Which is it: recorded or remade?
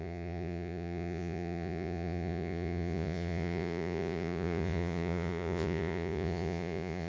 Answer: remade